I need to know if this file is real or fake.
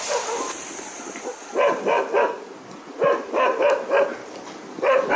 real